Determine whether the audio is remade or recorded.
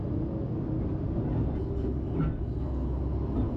recorded